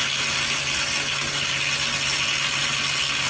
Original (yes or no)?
yes